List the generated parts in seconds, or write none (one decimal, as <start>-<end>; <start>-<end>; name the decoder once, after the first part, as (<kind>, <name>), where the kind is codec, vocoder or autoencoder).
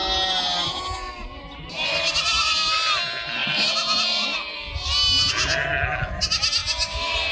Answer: none